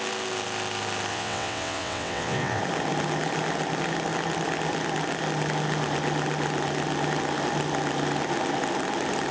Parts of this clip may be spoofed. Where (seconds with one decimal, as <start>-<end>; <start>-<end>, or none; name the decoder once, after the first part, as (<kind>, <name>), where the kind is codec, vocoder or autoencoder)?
1.1-2.6 (vocoder, WaveNeXt)

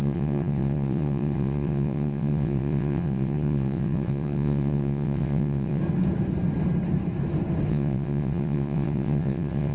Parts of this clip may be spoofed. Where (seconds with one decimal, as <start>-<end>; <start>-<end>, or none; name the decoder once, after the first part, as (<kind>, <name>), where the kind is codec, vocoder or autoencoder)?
0.0-5.8 (vocoder, WaveNeXt); 7.7-9.7

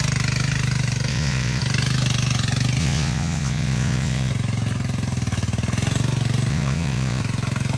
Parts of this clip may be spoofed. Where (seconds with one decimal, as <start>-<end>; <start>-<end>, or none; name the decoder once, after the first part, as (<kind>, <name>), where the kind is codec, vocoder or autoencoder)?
1.1-1.6 (vocoder, Vocos); 2.8-4.3; 6.5-7.2

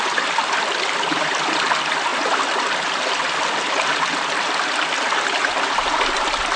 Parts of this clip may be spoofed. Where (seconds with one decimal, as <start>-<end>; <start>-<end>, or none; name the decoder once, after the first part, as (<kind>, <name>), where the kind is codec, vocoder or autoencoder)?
none

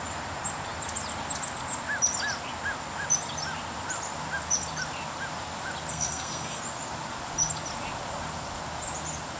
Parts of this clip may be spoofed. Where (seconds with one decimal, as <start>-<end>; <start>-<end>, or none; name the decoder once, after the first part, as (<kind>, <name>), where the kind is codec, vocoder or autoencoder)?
5.9-6.6 (codec, SNAC)

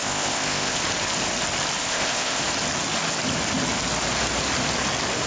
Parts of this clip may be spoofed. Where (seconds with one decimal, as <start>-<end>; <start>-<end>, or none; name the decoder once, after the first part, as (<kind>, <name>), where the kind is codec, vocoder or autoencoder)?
0.0-0.8 (codec, ZipCodec); 1.8-2.4

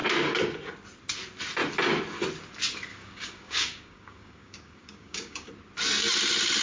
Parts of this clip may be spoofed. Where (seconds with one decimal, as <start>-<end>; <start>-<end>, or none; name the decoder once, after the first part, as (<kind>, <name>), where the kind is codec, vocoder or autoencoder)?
2.9-5.5 (codec, DAC)

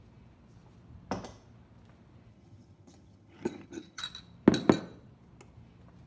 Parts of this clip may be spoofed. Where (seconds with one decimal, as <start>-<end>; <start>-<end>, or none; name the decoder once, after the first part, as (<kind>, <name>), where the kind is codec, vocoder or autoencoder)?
2.3-4.0 (vocoder, HiFi-GAN)